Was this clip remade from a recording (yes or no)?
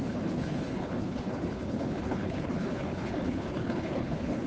yes